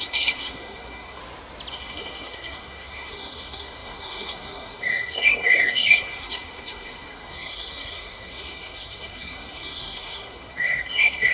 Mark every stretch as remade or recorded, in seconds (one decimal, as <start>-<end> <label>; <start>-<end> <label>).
0.0-1.2 remade; 1.2-1.7 recorded; 1.7-11.3 remade